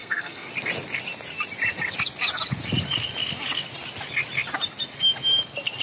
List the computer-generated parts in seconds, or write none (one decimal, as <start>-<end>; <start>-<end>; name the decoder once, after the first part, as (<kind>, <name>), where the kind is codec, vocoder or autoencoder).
0.0-0.5 (codec, SNAC)